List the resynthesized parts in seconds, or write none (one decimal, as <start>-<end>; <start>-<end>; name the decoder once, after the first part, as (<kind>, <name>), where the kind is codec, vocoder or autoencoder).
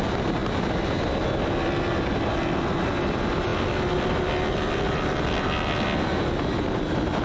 none